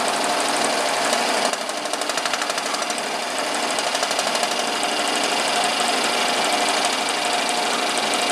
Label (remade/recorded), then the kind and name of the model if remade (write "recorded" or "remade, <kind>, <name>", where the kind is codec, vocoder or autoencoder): recorded